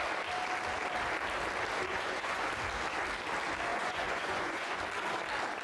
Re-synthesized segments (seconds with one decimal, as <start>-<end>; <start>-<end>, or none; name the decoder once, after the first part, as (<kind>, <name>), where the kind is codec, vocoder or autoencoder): 1.9-2.5 (vocoder, Vocos); 3.7-4.8